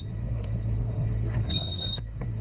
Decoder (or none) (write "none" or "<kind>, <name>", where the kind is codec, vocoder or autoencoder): codec, SNAC